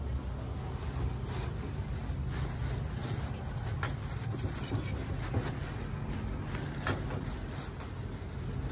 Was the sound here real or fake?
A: real